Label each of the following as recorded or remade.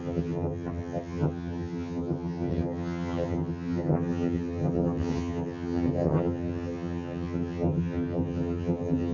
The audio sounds remade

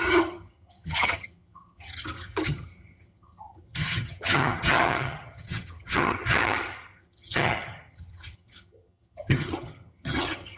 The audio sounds remade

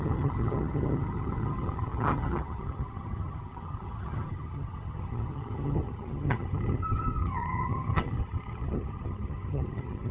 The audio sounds remade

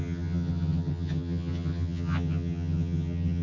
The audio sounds remade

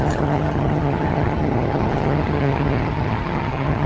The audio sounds remade